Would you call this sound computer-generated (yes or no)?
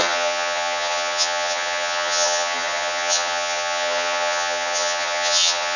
yes